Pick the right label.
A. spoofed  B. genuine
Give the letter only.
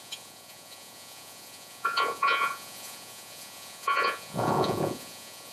A